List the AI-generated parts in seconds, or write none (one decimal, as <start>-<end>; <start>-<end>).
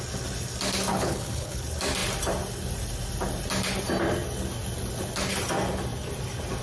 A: 0.9-1.6